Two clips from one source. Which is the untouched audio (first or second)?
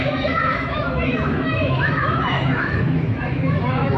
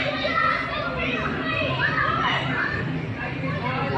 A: second